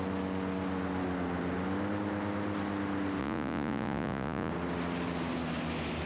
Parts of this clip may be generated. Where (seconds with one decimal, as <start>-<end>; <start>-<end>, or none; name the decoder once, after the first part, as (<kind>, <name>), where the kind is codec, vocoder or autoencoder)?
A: 3.2-4.5 (vocoder, Vocos)